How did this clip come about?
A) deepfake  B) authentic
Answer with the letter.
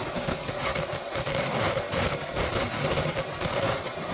A